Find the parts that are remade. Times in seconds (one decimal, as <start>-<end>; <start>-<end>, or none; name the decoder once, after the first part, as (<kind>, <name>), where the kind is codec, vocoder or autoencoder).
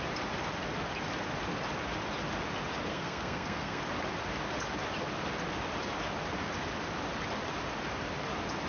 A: 2.9-3.8 (codec, SNAC)